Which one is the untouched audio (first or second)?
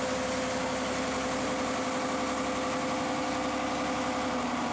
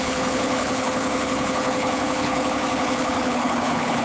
first